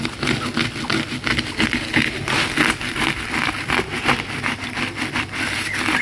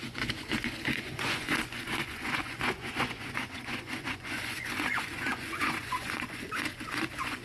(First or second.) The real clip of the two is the first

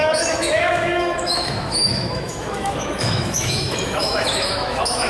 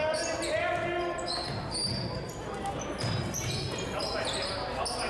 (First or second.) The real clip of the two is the second